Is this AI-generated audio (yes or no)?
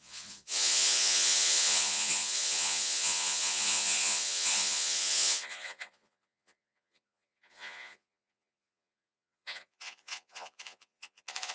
yes